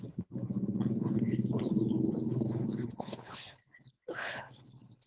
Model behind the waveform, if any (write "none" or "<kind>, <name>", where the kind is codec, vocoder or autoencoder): codec, HILCodec